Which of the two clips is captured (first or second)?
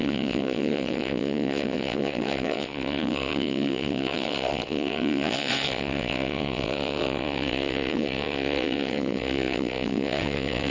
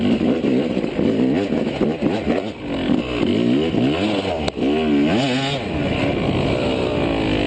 second